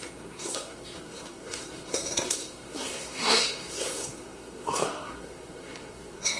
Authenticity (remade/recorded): remade